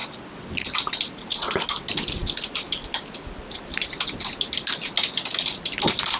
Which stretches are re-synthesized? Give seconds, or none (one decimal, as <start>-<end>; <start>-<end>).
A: none